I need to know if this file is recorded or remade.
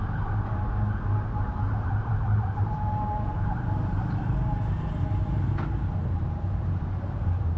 remade